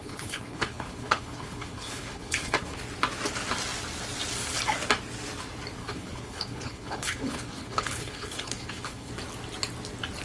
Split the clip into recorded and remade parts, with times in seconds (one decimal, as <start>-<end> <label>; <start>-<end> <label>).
0.0-2.8 remade; 2.8-5.8 recorded; 5.8-9.1 remade; 9.1-10.2 recorded